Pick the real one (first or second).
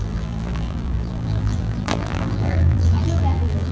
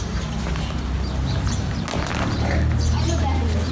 second